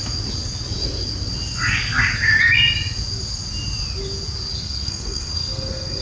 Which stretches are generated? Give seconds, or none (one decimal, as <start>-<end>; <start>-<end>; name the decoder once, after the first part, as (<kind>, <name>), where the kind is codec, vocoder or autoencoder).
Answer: 4.6-6.0 (codec, SNAC)